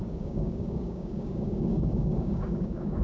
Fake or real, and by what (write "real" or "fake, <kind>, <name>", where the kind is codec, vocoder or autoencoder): fake, codec, DAC